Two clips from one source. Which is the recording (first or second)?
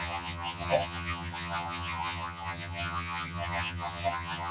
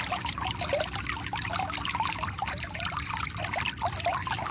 second